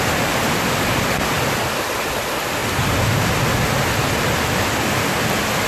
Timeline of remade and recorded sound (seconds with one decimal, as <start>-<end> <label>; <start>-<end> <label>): 0.0-5.7 recorded